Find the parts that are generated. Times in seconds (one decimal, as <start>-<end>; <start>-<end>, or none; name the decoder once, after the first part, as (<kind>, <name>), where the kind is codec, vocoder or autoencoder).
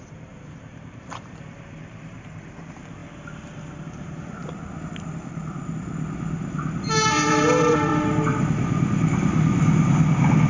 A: 0.0-3.0 (vocoder, BigVGAN v2); 3.7-4.4; 5.3-7.9